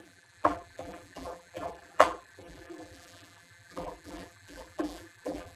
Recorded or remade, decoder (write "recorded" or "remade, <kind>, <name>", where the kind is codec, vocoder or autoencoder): remade, vocoder, BigVGAN v2